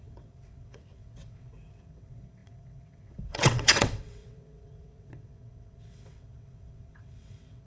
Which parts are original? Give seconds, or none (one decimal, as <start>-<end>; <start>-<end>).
none